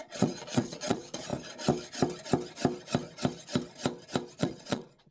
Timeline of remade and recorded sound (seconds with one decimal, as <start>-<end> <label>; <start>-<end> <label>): 0.0-1.3 remade; 1.3-4.4 recorded; 4.4-5.1 remade